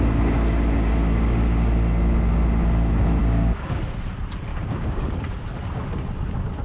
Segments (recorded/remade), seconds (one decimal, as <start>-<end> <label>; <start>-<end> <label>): 0.0-3.2 recorded; 3.2-3.8 remade; 3.8-4.5 recorded; 4.5-5.1 remade; 5.1-6.6 recorded